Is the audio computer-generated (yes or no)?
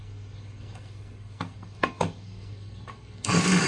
yes